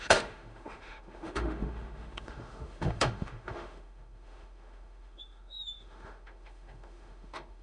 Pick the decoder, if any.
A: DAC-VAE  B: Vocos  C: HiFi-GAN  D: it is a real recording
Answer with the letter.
A